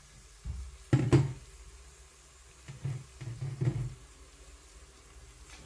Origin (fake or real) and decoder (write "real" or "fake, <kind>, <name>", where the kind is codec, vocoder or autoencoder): real